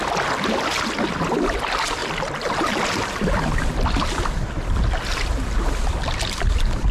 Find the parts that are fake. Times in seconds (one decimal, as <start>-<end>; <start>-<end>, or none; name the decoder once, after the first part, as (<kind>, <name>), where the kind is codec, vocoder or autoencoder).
none